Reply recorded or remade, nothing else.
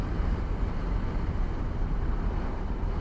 remade